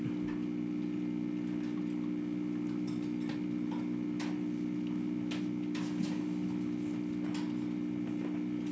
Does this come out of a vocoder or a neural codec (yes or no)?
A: no